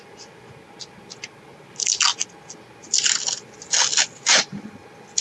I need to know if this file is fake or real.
real